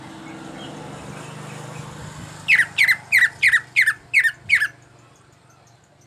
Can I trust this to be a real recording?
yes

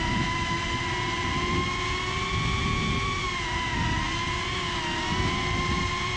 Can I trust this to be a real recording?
yes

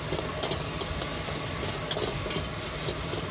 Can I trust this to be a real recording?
yes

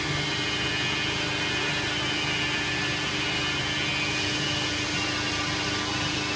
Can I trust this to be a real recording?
yes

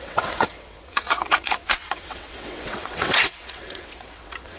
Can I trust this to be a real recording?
no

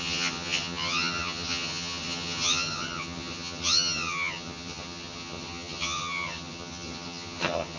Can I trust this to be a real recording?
no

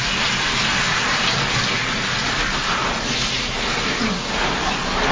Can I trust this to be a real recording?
yes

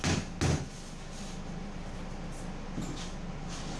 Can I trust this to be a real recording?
yes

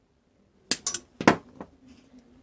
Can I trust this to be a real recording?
yes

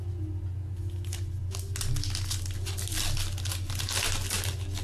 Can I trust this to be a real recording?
yes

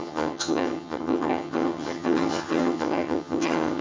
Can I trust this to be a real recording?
no